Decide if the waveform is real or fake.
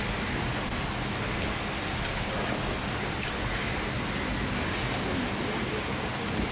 real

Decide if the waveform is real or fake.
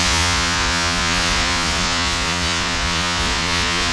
fake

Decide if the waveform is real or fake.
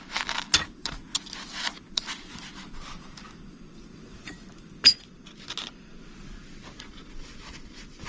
real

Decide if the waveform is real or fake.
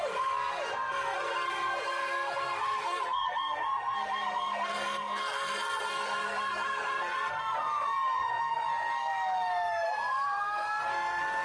fake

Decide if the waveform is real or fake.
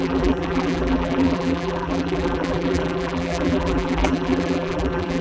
fake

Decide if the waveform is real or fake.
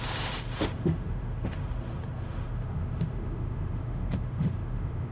fake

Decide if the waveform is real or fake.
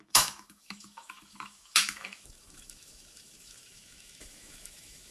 fake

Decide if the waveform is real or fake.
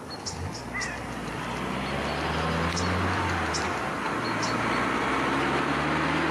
real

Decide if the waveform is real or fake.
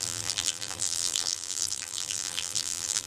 fake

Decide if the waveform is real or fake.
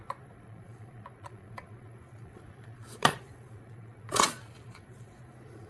fake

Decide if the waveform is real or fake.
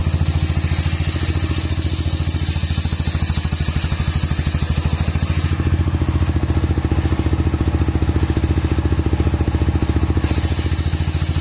real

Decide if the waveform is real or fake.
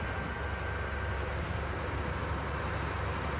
real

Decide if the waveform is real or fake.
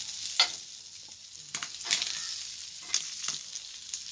real